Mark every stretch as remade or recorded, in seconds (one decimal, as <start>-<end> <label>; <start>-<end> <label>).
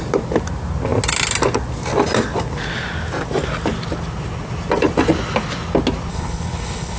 0.0-6.1 recorded; 6.1-7.0 remade